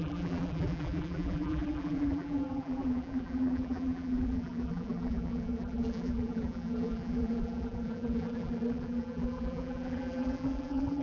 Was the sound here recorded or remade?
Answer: remade